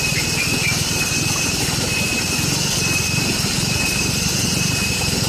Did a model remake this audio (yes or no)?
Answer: no